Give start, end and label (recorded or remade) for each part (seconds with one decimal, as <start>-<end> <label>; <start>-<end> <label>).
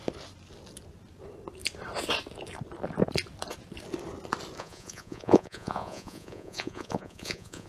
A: 0.0-4.6 recorded; 4.6-7.7 remade